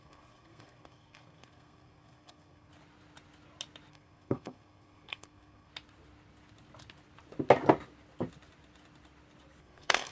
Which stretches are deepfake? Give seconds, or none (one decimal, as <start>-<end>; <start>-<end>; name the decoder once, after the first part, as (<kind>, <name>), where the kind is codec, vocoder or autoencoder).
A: 0.0-2.7 (codec, SNAC); 3.9-5.7; 9.6-10.1